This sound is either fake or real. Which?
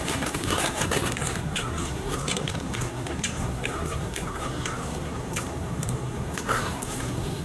fake